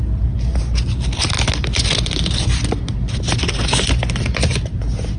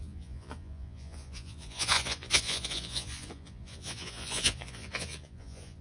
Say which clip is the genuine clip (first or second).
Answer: first